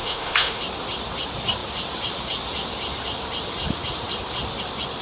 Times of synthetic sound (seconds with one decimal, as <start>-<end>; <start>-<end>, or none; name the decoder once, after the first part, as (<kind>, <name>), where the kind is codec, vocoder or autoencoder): 0.0-0.6 (autoencoder, DAC-VAE)